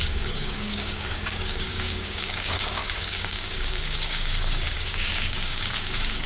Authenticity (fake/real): fake